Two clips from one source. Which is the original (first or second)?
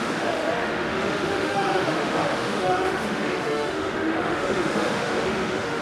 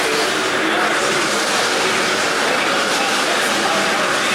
second